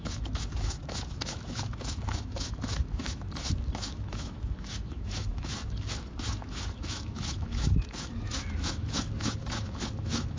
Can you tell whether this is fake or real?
fake